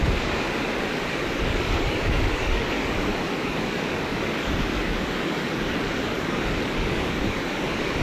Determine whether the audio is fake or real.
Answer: fake